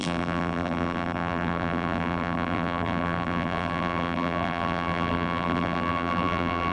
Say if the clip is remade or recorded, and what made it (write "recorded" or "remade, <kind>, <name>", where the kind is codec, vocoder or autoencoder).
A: remade, vocoder, BigVGAN v2